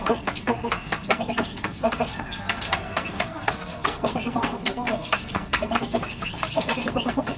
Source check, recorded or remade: remade